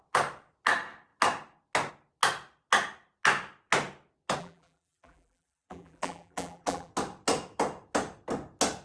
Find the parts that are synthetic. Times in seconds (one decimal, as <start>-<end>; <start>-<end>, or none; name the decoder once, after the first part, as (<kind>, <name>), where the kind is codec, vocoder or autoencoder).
4.4-6.9 (vocoder, BigVGAN v2)